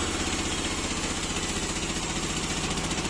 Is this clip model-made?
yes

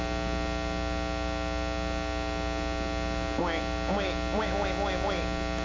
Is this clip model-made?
no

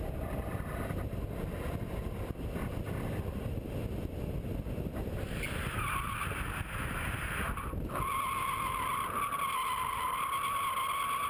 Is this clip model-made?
no